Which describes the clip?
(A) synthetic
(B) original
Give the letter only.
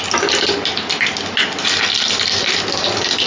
B